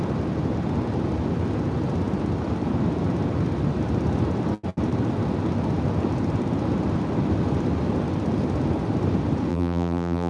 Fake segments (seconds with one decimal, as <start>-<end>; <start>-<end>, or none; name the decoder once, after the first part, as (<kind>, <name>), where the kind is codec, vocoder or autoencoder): 9.5-10.3 (vocoder, BigVGAN v2)